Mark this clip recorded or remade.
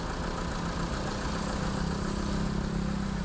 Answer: recorded